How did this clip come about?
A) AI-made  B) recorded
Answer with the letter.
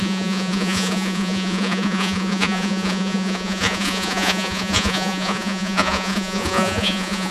A